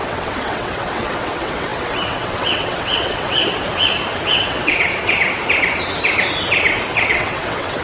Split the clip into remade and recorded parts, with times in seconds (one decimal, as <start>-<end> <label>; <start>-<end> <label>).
0.0-3.4 remade; 3.4-4.3 recorded; 4.3-4.9 remade; 4.9-6.9 recorded; 6.9-7.8 remade